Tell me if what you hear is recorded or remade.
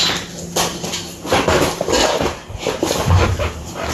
recorded